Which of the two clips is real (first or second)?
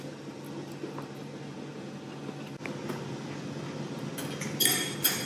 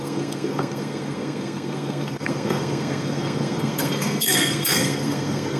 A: first